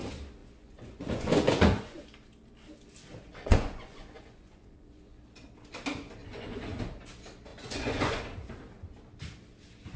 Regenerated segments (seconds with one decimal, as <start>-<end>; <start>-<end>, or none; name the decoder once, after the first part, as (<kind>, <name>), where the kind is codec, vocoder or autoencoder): 0.4-2.0 (vocoder, Vocos); 3.3-5.2; 6.2-6.8; 7.5-8.2